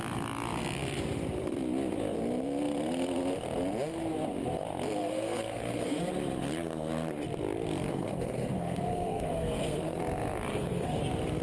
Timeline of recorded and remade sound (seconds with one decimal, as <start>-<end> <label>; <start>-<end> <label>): 0.0-5.0 recorded; 5.0-6.0 remade; 6.0-7.9 recorded; 7.9-10.0 remade; 10.0-10.5 recorded; 10.5-11.0 remade; 11.0-11.4 recorded